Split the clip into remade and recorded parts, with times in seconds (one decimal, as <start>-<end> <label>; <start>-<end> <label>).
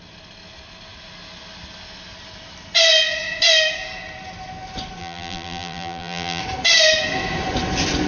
0.0-5.0 recorded; 5.0-6.4 remade; 6.4-8.1 recorded